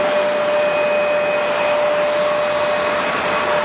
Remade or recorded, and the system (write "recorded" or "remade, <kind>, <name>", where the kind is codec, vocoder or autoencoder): recorded